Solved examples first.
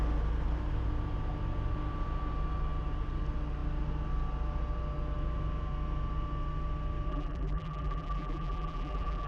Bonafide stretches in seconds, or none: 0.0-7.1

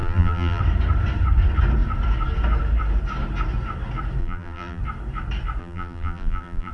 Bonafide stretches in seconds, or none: 0.6-4.2; 4.8-5.6

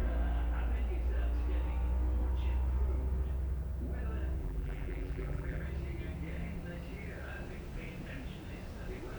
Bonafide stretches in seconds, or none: 0.0-4.4; 5.6-9.2